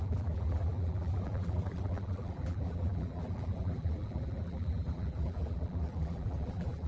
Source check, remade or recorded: remade